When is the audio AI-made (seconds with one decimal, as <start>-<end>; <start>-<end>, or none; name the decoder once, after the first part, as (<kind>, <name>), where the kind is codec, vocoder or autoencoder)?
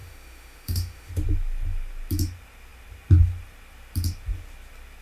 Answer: 0.0-1.1 (autoencoder, DAC-VAE)